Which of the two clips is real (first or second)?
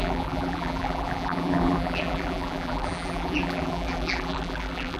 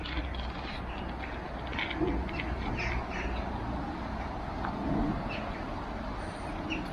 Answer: second